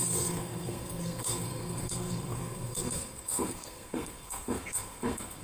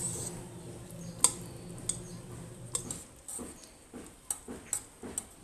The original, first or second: second